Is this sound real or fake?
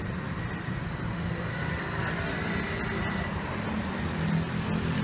real